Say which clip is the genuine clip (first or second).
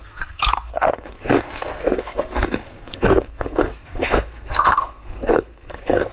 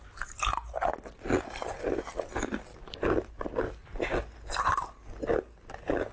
second